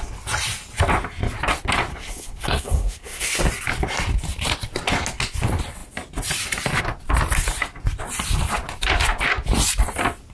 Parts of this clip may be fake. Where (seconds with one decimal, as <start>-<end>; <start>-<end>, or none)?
1.9-3.4